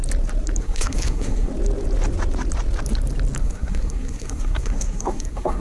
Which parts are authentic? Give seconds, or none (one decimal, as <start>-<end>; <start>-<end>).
0.0-0.6; 1.5-3.4